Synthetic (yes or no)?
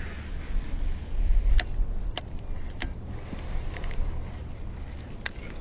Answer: no